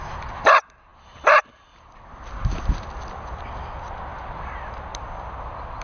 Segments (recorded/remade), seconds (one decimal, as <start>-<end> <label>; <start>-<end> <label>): 0.0-5.8 recorded